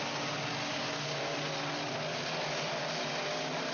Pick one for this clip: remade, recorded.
recorded